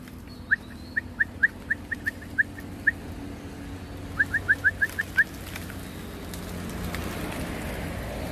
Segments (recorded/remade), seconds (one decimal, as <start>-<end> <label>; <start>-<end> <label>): 0.0-8.3 recorded